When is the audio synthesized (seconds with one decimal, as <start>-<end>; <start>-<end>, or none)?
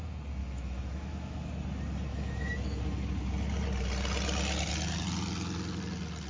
0.4-1.5; 2.1-2.8